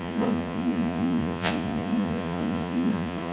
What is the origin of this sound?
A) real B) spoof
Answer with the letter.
B